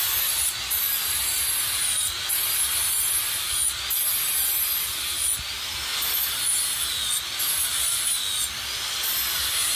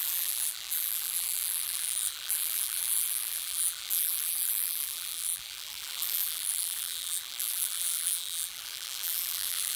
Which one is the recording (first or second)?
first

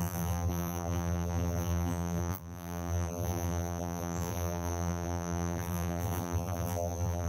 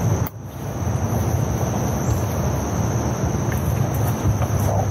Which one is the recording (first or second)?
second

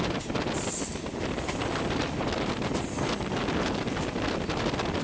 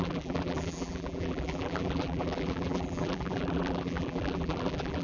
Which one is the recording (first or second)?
first